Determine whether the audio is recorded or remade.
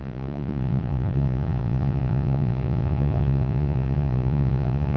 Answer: remade